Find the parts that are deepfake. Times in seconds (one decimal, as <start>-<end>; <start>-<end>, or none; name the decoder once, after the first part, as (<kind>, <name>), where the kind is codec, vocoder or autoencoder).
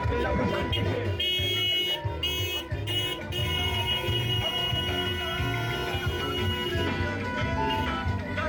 3.4-4.7 (vocoder, Vocos)